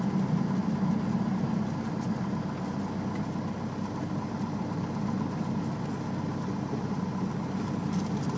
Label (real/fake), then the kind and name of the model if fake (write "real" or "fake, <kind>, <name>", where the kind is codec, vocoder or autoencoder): real